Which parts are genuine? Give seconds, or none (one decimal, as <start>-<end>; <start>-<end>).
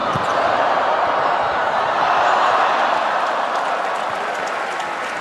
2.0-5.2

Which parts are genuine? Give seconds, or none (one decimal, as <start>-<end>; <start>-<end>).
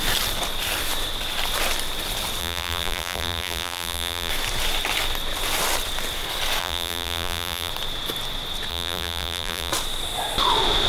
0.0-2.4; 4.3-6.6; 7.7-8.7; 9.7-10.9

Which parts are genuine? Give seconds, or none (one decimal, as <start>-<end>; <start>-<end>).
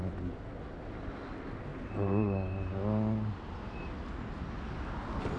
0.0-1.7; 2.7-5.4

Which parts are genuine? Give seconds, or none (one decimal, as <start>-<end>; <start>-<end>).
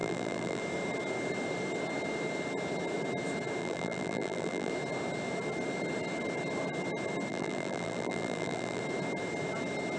0.6-3.6; 4.7-7.3; 8.8-10.0